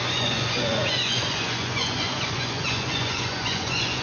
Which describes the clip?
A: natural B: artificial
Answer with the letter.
B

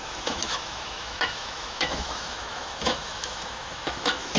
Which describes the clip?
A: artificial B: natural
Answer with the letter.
A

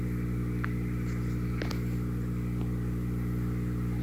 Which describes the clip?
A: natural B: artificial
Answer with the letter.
A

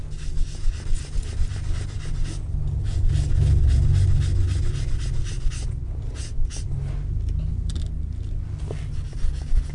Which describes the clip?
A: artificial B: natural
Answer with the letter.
B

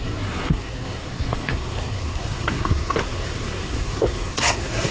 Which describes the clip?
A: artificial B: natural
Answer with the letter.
A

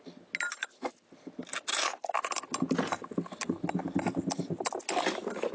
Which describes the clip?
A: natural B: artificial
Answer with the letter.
A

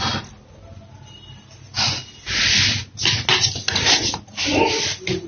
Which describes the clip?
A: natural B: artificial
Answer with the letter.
A